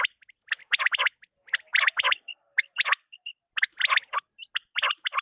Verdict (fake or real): real